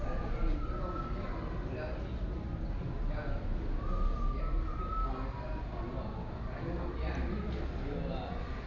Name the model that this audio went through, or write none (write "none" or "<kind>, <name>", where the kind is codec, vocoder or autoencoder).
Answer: none